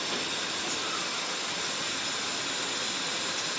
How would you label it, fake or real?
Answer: real